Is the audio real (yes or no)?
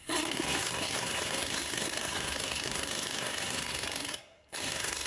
no